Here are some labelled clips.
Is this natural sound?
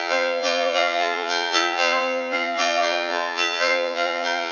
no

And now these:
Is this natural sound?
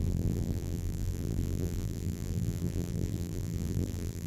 no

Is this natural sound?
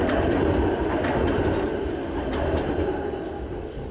yes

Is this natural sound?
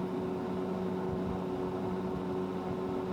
yes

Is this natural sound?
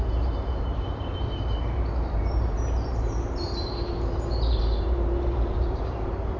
no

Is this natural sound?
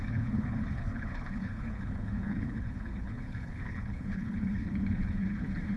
no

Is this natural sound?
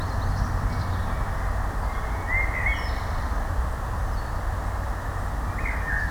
yes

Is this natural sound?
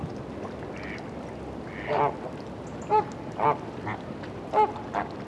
yes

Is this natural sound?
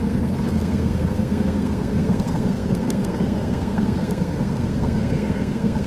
no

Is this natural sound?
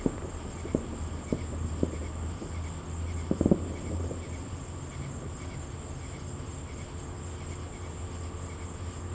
yes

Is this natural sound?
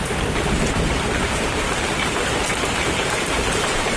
no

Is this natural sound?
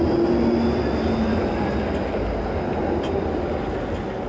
yes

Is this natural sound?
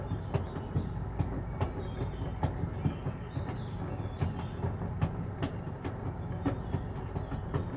yes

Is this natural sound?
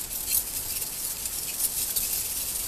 yes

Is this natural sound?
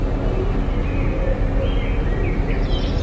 yes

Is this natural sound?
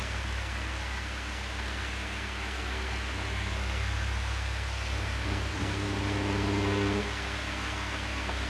no